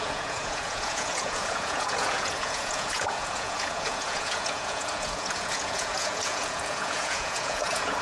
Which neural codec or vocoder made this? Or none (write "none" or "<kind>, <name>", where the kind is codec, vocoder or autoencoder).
vocoder, Vocos